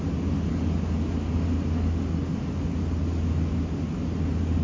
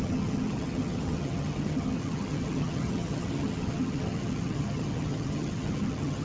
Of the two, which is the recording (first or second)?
first